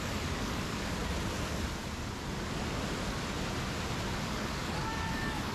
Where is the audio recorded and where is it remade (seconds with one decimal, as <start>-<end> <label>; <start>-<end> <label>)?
0.0-1.0 remade; 1.0-4.3 recorded; 4.3-5.5 remade